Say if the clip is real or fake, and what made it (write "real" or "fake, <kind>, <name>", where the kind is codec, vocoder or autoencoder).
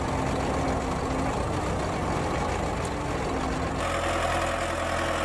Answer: real